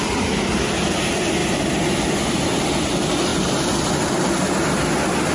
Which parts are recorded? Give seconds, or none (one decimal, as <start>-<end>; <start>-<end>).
0.0-5.3